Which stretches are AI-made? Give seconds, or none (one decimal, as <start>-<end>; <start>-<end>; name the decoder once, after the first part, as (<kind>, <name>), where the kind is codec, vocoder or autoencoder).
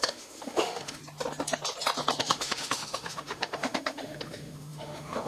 0.0-1.0 (autoencoder, DAC-VAE); 2.2-5.3